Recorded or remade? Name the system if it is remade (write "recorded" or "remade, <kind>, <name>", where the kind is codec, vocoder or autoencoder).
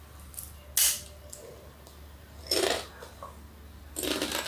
recorded